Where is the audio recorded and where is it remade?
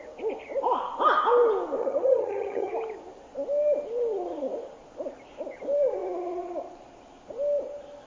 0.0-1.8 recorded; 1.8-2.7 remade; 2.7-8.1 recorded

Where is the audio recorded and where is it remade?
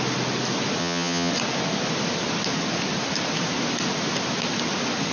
0.0-0.8 recorded; 0.8-1.3 remade; 1.3-5.1 recorded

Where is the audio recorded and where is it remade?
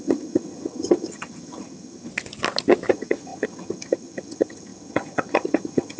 0.0-2.1 remade; 2.1-2.9 recorded; 2.9-6.0 remade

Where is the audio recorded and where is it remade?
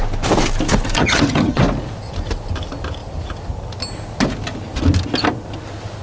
0.0-1.0 recorded; 1.0-1.6 remade; 1.6-6.0 recorded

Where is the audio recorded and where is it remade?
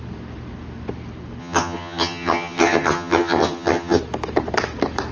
0.0-1.4 recorded; 1.4-4.0 remade; 4.0-5.1 recorded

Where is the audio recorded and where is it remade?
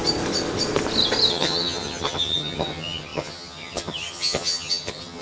0.0-1.3 recorded; 1.3-5.2 remade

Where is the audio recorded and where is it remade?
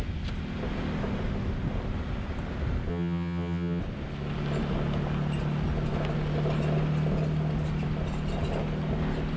0.0-2.9 recorded; 2.9-3.8 remade; 3.8-9.4 recorded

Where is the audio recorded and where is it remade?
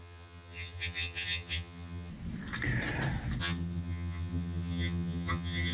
0.0-2.1 remade; 2.1-3.4 recorded; 3.4-5.7 remade